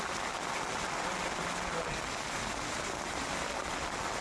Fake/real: real